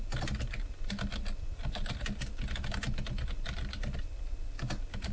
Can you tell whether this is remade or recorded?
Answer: recorded